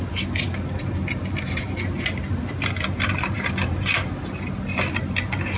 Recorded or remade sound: recorded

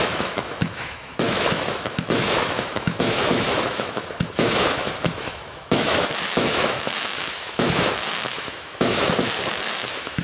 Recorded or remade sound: remade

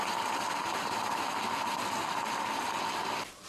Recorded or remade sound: recorded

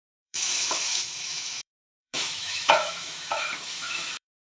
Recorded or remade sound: remade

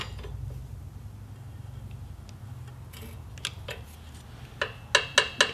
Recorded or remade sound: recorded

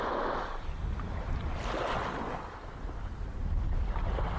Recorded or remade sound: recorded